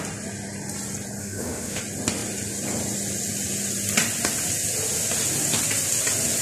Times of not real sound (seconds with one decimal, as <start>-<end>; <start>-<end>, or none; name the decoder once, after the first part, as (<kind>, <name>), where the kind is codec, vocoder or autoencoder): 1.2-1.8 (autoencoder, DAC-VAE)